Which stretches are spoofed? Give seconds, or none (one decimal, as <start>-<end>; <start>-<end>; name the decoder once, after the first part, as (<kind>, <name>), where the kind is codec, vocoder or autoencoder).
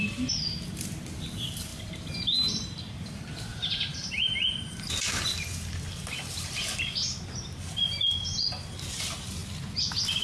1.7-2.9 (vocoder, BigVGAN v2); 3.5-5.2